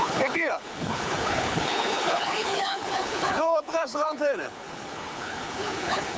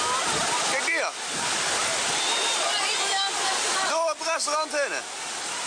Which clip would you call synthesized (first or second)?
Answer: first